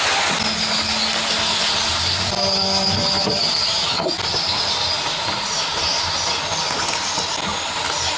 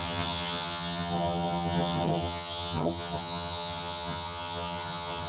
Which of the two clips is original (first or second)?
first